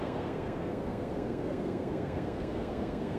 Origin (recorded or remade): remade